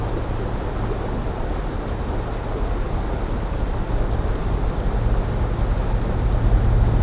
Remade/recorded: recorded